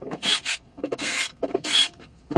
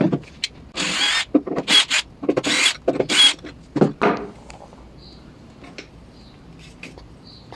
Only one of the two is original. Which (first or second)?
second